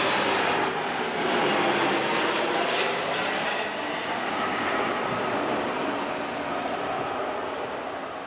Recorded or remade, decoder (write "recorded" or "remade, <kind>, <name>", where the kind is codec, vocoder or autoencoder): recorded